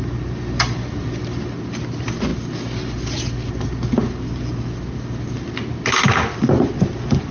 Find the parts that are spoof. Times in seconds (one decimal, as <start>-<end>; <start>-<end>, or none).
none